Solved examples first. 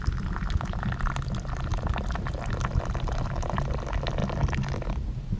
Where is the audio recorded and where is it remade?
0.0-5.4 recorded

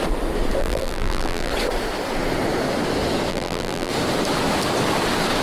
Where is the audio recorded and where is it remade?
0.0-0.6 recorded; 0.6-1.5 remade; 1.5-3.3 recorded; 3.3-3.9 remade; 3.9-5.4 recorded

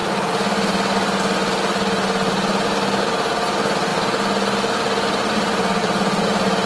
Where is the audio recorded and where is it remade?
0.0-6.7 recorded